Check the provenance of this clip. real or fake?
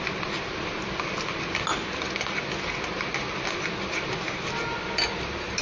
real